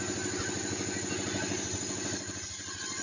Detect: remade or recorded recorded